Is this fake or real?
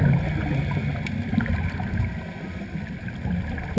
real